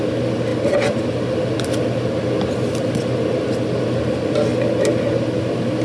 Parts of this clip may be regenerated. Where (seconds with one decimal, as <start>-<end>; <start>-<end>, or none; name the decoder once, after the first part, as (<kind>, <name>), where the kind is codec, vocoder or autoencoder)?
none